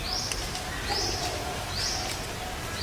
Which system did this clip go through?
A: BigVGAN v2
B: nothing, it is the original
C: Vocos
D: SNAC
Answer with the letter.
B